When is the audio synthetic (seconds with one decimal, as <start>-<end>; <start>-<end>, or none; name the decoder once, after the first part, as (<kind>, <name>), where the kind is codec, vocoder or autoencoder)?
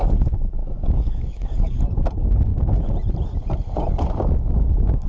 0.6-1.8 (codec, DAC)